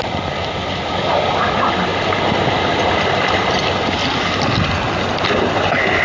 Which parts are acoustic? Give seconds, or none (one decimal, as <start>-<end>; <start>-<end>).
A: 0.0-6.0